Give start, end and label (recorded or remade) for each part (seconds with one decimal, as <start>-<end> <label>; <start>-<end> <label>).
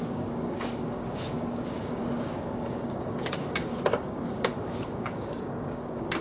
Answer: 0.0-6.2 remade